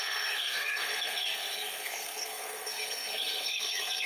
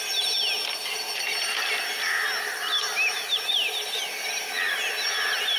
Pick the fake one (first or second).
first